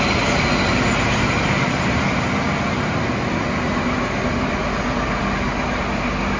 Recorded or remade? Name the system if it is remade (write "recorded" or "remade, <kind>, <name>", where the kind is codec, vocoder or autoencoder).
recorded